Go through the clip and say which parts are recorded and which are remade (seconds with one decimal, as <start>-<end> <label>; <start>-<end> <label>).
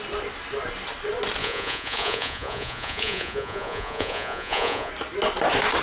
0.0-1.4 recorded; 1.4-4.9 remade; 4.9-5.8 recorded